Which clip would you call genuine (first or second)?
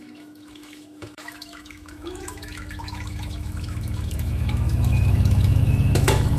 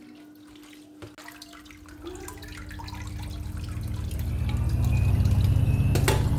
second